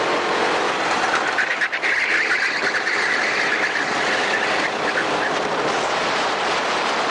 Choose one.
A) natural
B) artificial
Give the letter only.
A